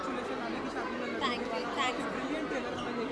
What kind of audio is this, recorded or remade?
recorded